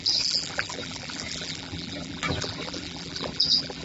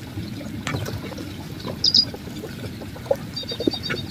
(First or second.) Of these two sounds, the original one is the second